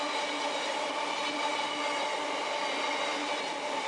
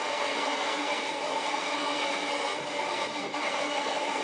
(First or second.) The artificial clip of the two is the second